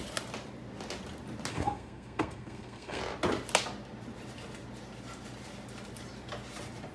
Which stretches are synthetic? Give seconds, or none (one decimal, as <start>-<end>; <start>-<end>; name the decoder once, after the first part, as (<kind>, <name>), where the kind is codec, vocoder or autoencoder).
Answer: 1.5-3.0 (codec, SNAC)